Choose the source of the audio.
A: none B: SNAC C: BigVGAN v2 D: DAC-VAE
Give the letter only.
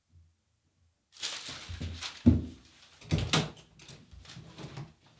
A